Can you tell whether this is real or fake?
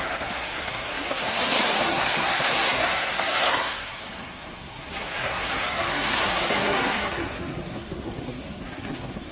fake